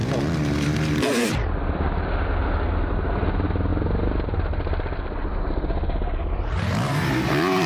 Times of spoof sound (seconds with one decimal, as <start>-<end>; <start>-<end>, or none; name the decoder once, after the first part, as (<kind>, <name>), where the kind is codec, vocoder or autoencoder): none